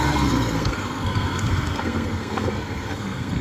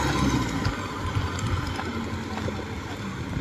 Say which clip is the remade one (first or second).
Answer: first